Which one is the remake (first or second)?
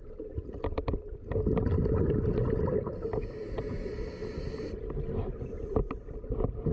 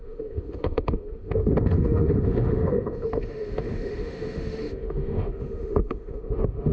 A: second